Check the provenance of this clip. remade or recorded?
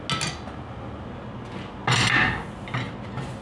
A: recorded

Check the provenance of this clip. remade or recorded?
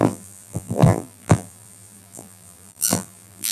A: remade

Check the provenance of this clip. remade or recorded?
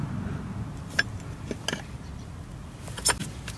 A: recorded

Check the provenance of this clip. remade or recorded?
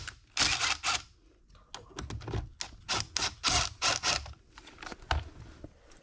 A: recorded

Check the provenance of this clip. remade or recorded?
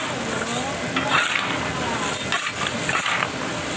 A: recorded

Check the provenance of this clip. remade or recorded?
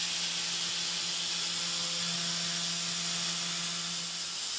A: recorded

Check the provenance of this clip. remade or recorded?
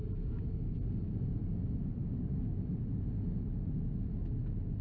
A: recorded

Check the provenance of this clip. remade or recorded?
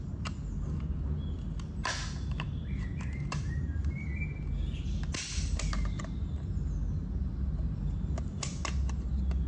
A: recorded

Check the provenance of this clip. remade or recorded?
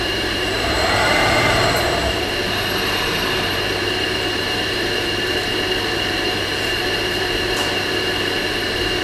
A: remade